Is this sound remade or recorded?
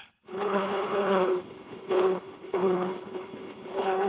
remade